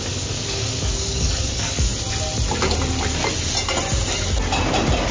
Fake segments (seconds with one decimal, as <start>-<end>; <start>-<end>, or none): 0.0-1.9